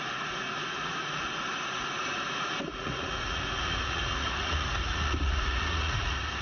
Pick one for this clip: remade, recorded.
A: remade